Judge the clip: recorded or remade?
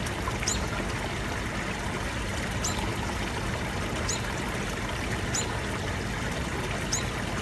recorded